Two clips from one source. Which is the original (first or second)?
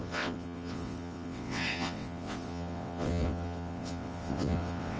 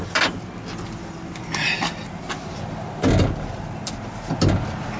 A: second